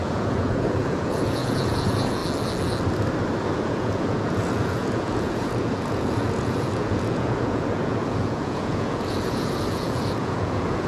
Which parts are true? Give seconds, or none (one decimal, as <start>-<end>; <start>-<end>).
2.2-3.4